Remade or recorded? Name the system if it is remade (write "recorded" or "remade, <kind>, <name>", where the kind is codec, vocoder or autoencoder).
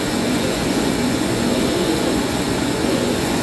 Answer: remade, vocoder, Vocos